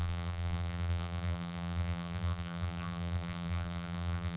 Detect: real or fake fake